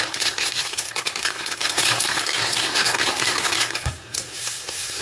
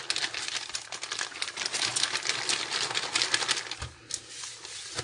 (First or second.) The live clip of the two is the second